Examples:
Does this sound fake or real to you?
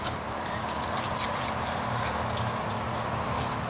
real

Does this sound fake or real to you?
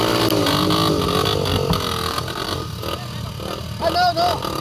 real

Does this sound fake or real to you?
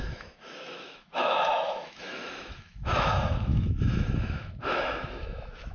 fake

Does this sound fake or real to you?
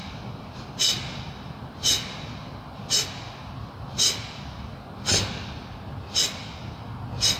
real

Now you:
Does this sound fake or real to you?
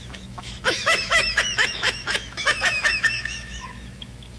fake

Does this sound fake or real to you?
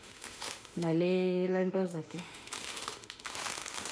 fake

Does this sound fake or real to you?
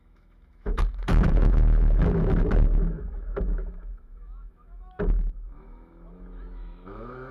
fake